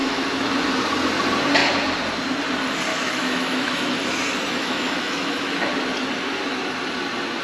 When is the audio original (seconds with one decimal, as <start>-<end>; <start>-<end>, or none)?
0.5-2.9; 4.0-4.5; 5.7-7.4